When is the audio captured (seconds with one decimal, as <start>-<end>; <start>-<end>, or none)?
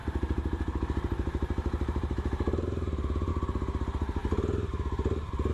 3.3-5.5